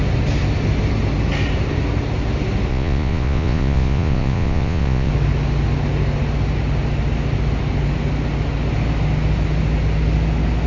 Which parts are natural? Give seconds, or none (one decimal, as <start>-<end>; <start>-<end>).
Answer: 0.0-2.7; 5.1-10.7